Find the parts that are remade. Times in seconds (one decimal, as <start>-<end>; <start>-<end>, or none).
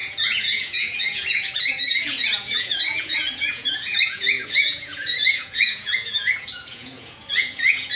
0.0-8.0